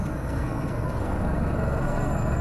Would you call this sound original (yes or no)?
no